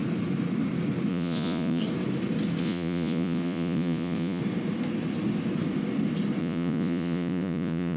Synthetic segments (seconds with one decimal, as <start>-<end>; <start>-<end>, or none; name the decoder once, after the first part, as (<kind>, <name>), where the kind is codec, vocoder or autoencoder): 1.1-1.8 (vocoder, Vocos); 2.6-4.4; 6.4-8.0